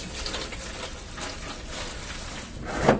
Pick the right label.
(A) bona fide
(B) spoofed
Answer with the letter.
A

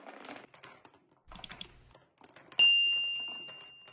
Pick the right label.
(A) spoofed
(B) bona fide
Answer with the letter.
B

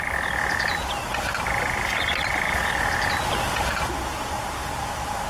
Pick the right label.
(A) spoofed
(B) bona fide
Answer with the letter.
B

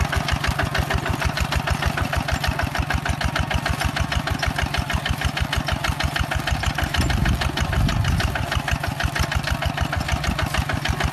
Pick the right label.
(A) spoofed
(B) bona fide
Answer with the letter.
B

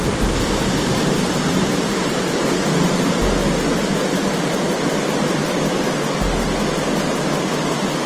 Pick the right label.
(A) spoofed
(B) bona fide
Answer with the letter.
B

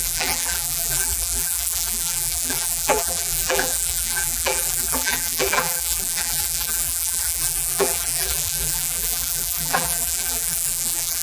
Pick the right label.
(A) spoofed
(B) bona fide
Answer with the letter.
A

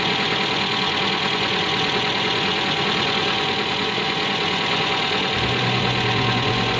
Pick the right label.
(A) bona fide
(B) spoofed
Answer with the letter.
B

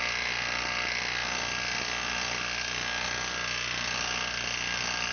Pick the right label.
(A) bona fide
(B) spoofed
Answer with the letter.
A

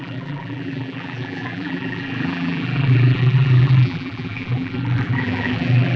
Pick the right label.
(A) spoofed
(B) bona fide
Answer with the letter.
A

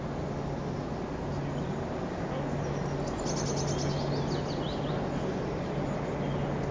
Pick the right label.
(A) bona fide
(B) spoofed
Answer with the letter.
A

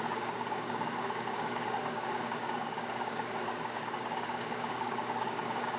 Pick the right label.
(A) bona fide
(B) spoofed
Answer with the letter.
B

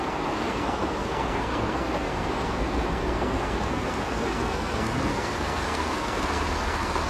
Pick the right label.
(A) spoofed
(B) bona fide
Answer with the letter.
A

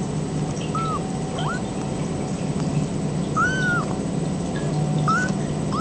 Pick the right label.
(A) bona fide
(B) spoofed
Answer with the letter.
A